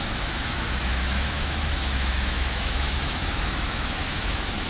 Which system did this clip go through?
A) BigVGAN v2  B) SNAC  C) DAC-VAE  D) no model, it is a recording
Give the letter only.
C